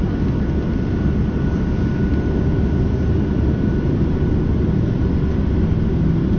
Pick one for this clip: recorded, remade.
recorded